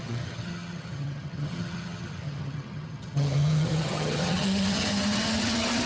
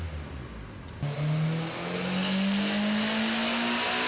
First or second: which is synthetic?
first